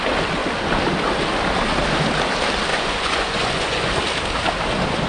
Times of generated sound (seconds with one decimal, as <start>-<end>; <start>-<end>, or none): 2.7-3.9